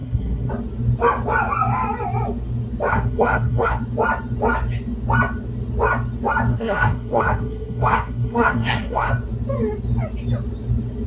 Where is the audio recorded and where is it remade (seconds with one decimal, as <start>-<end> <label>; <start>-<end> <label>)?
0.0-0.5 remade; 0.5-2.9 recorded; 2.9-3.8 remade; 3.8-6.5 recorded; 6.5-9.1 remade; 9.1-11.1 recorded

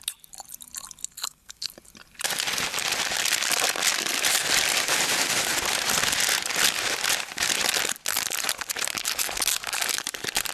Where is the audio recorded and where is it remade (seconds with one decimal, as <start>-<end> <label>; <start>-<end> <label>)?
0.0-1.2 recorded; 1.2-1.7 remade; 1.7-10.5 recorded

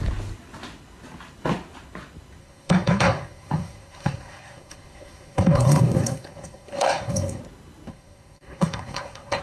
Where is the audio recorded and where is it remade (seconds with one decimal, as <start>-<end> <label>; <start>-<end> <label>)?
0.0-2.4 recorded; 2.4-7.4 remade; 7.4-7.9 recorded; 7.9-9.4 remade